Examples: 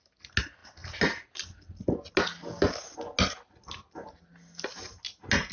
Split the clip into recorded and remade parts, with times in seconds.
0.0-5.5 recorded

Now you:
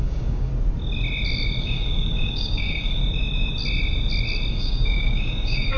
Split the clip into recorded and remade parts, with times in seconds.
0.0-0.5 remade; 0.5-1.6 recorded; 1.6-3.0 remade; 3.0-4.5 recorded; 4.5-5.8 remade

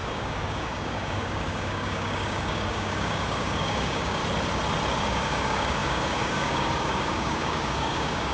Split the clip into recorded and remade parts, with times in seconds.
0.0-4.2 remade; 4.2-5.0 recorded; 5.0-8.3 remade

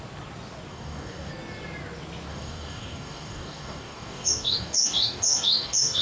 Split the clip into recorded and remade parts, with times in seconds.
0.0-0.7 recorded; 0.7-1.3 remade; 1.3-2.3 recorded; 2.3-6.0 remade

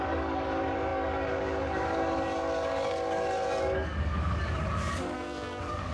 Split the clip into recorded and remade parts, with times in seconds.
0.0-5.9 remade

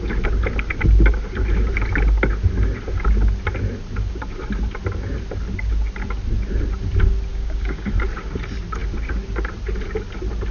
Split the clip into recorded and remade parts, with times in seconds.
0.0-7.3 recorded; 7.3-7.9 remade; 7.9-10.5 recorded

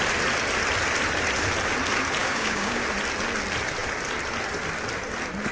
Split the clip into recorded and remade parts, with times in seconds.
0.0-2.2 recorded; 2.2-2.8 remade; 2.8-5.5 recorded